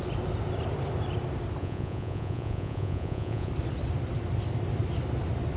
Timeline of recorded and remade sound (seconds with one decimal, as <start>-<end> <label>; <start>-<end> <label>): 0.0-1.6 recorded; 1.6-3.5 remade; 3.5-5.6 recorded